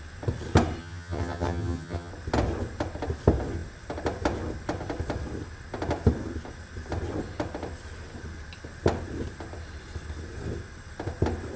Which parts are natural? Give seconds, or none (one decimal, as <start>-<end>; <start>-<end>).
0.0-0.8; 2.1-11.6